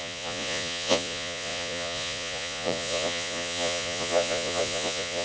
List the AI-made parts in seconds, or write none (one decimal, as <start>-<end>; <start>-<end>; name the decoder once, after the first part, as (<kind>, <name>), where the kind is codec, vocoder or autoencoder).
0.0-5.2 (vocoder, Vocos)